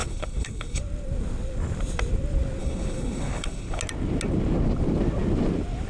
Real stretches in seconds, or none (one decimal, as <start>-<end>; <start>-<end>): 0.8-2.6; 3.8-5.9